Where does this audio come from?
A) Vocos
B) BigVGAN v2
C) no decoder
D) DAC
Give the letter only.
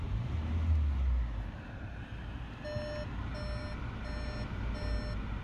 C